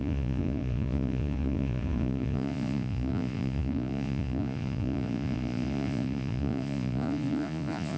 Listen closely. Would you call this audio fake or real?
fake